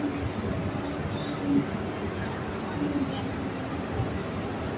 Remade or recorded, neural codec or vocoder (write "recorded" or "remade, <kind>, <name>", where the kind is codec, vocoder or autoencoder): recorded